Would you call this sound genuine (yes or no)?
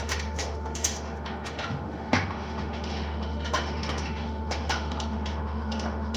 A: no